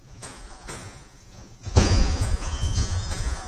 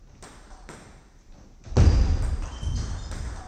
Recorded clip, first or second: second